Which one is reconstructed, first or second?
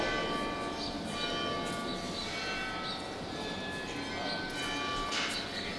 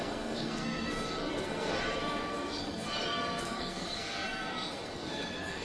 second